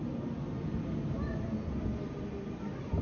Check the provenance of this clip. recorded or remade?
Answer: recorded